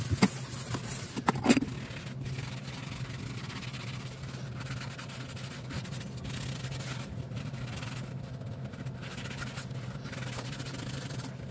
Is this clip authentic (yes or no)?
yes